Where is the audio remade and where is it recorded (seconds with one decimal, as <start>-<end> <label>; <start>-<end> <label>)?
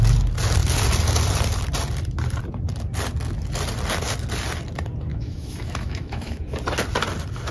0.0-5.1 recorded; 5.1-6.4 remade; 6.4-7.5 recorded